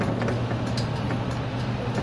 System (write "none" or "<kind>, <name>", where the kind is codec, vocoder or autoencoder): none